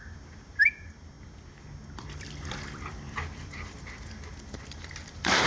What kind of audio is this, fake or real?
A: fake